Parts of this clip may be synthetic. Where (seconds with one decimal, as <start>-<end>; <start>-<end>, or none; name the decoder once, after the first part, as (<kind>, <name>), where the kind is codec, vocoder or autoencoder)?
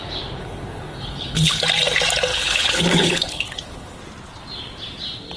0.4-1.6 (codec, HILCodec); 2.3-4.0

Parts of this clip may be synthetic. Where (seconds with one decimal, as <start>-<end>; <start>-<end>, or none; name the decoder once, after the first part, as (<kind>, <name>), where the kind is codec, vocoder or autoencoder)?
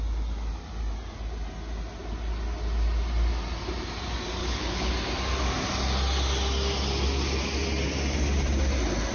4.4-4.9 (codec, HILCodec)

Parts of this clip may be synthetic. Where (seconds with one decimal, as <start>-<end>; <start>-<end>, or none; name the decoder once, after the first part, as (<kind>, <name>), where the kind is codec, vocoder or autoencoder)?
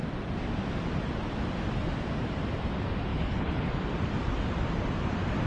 3.1-3.7 (codec, HILCodec)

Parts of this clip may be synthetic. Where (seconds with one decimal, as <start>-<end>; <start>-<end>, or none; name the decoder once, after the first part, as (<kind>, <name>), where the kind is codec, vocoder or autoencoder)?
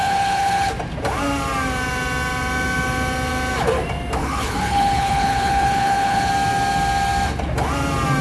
0.0-0.7 (codec, HILCodec); 4.2-6.3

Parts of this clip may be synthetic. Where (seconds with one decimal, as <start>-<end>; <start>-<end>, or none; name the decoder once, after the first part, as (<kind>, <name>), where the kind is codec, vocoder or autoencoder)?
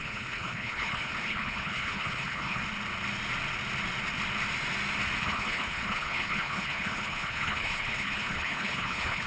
0.0-2.6 (codec, HILCodec); 5.2-9.3